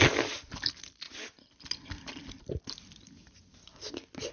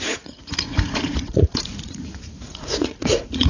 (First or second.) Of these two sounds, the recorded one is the first